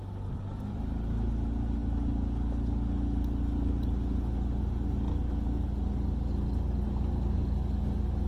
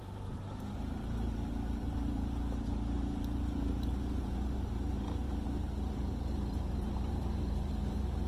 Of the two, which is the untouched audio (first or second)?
first